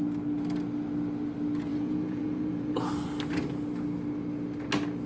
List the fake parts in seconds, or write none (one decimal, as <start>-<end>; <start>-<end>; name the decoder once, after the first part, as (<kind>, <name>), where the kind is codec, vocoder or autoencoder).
1.7-2.9 (vocoder, Vocos)